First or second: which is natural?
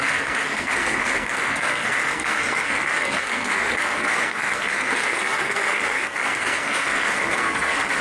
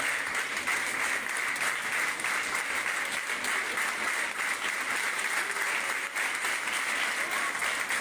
second